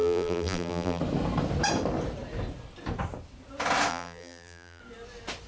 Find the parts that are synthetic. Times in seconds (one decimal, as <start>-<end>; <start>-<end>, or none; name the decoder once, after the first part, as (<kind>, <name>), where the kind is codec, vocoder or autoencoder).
0.0-1.0 (vocoder, BigVGAN v2); 3.9-4.8